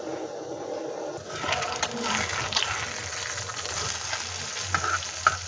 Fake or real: real